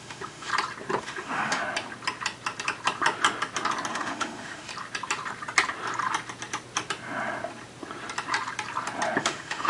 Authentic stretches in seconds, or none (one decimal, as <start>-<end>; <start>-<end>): 0.5-1.0; 1.6-3.9; 4.7-9.2